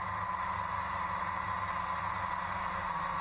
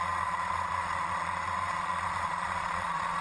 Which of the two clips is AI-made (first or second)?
second